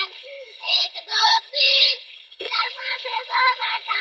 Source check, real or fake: fake